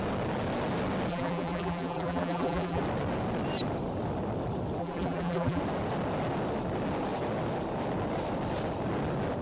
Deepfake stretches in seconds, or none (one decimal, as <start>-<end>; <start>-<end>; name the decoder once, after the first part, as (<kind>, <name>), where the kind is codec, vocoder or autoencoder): 1.1-2.8 (vocoder, BigVGAN v2); 4.8-5.6